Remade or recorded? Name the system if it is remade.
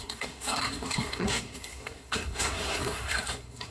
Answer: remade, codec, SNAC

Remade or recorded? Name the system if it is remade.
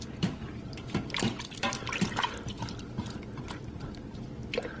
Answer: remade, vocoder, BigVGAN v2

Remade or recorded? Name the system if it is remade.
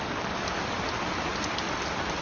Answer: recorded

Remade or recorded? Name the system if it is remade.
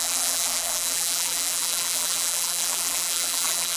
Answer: remade, vocoder, BigVGAN v2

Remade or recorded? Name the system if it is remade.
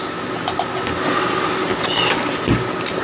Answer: recorded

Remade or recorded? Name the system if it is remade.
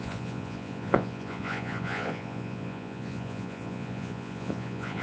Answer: remade, vocoder, Vocos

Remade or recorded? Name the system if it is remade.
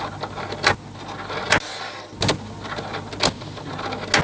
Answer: recorded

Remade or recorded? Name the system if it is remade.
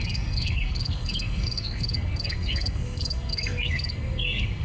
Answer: remade, codec, SNAC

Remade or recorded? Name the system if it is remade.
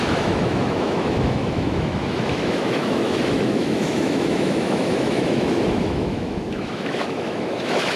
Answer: remade, autoencoder, DAC-VAE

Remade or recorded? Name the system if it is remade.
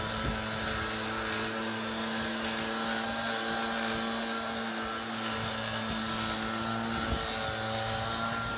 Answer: recorded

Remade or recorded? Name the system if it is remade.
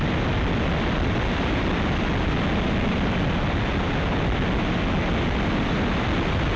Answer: recorded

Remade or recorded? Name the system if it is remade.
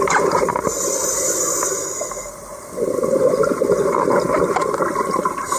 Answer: recorded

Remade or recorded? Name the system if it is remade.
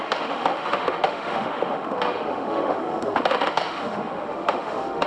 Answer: remade, autoencoder, DAC-VAE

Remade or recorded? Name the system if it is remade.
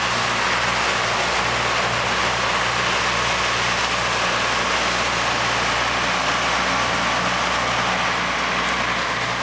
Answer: recorded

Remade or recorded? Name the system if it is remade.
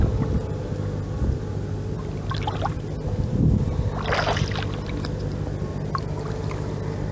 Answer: recorded